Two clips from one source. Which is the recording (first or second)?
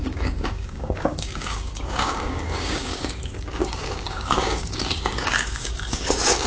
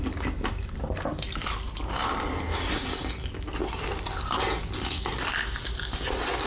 second